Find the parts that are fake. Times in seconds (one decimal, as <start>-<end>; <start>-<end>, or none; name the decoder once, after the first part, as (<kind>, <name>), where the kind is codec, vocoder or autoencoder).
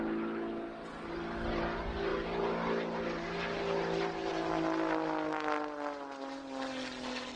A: none